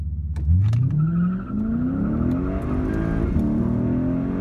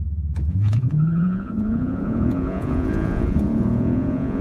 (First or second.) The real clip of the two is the first